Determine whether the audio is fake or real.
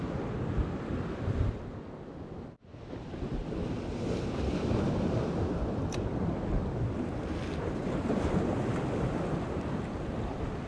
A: real